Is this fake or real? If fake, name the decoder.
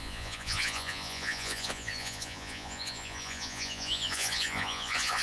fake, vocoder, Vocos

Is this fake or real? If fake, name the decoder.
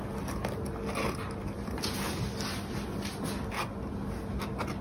real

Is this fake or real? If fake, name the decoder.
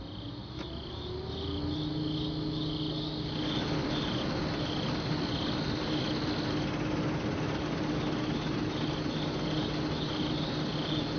real